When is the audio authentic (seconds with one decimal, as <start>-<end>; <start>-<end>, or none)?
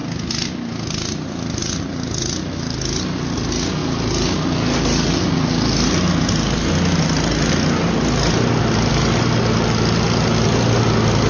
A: 0.0-11.3